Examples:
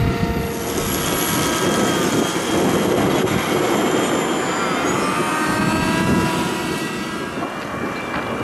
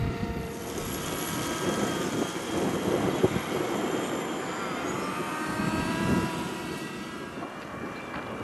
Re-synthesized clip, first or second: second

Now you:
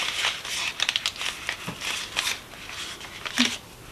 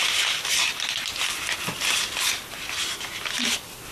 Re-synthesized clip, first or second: second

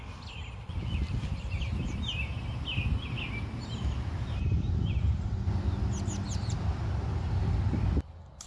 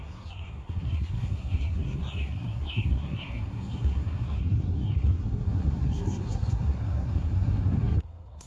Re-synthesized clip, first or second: second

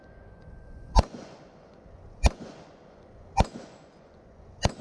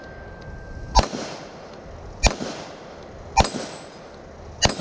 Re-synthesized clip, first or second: first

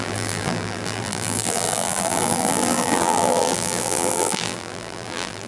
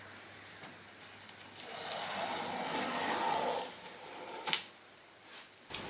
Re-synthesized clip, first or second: first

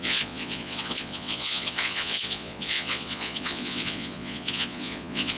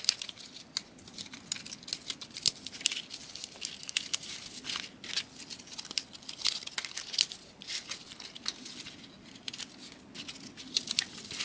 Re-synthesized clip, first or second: first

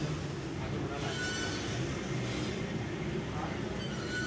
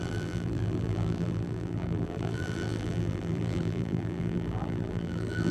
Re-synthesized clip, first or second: second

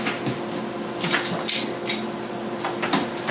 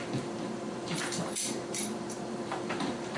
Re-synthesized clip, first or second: second